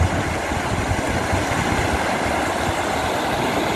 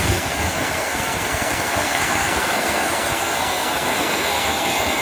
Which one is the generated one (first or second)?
second